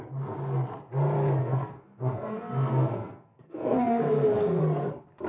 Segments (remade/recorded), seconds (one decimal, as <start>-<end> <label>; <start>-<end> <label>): 0.0-1.4 recorded; 1.4-4.6 remade; 4.6-5.3 recorded